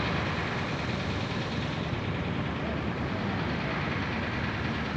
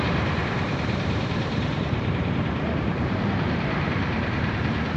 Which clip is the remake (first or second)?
second